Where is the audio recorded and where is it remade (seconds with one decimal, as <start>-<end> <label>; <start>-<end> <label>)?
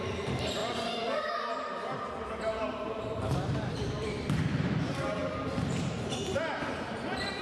0.0-7.4 remade